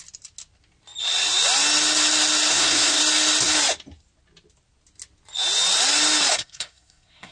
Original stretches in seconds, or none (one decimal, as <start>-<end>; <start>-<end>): 0.0-2.5; 3.0-6.3